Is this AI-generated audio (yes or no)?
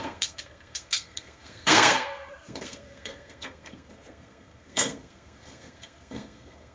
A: yes